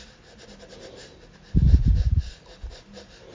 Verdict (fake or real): real